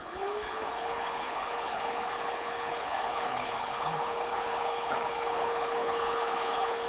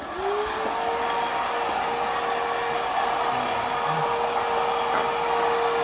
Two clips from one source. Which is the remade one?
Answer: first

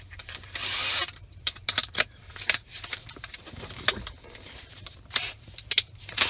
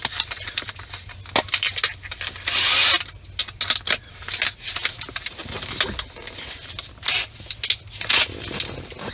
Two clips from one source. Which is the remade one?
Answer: first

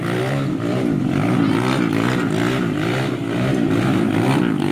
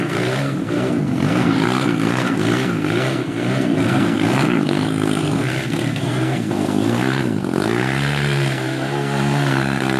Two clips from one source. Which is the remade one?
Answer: second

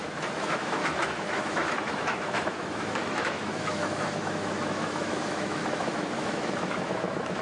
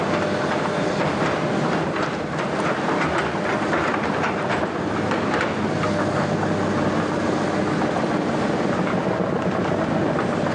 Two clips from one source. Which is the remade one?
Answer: first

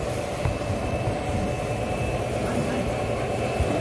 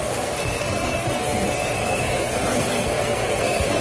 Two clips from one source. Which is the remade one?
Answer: second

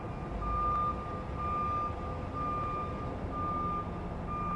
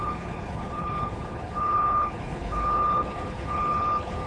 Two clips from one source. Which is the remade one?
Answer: second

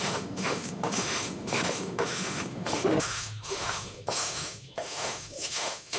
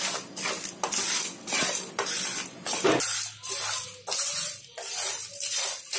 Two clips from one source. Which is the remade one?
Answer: first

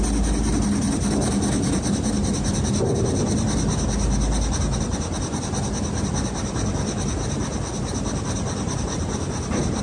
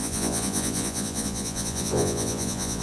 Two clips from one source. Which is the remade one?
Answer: second